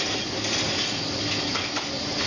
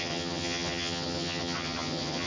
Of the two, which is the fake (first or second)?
second